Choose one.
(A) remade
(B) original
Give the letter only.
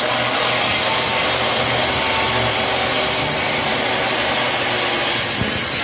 B